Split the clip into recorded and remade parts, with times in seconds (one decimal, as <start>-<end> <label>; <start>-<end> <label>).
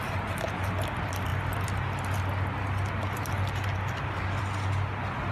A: 0.0-5.3 recorded